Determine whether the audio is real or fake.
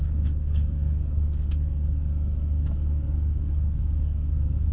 fake